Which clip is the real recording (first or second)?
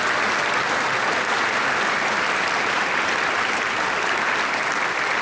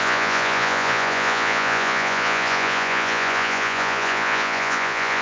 first